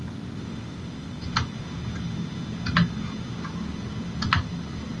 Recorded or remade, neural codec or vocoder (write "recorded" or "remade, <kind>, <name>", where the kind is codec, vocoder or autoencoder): recorded